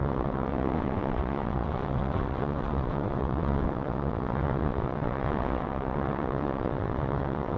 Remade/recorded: remade